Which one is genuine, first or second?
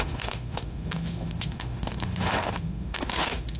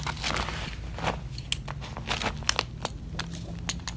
second